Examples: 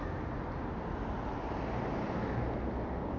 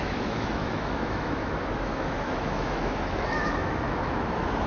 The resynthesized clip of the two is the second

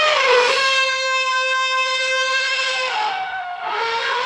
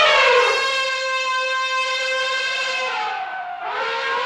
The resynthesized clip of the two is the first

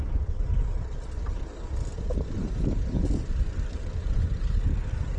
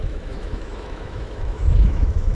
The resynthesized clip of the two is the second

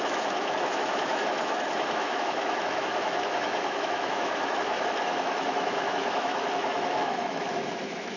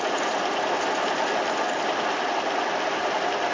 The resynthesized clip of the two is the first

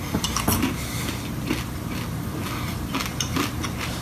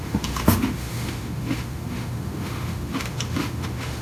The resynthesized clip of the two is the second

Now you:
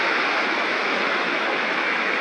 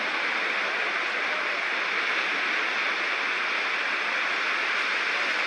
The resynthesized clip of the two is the first